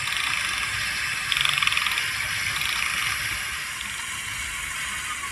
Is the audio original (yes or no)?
yes